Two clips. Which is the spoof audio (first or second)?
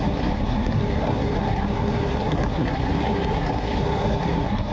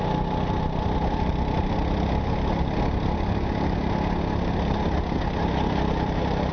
first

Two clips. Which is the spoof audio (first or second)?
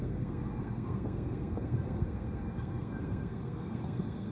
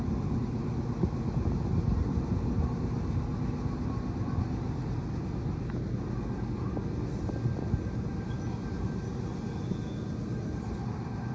first